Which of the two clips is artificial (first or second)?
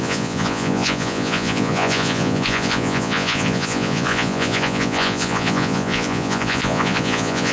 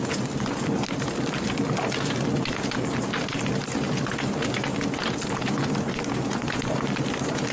first